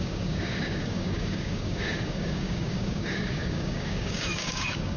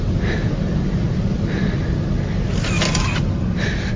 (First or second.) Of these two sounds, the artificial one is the first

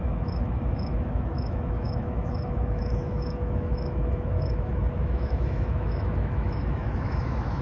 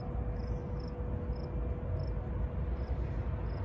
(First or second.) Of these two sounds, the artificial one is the first